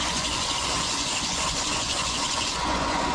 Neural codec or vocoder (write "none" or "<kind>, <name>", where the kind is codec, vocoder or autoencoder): vocoder, Vocos